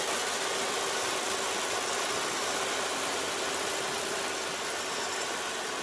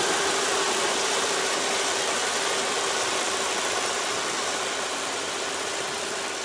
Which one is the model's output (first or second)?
second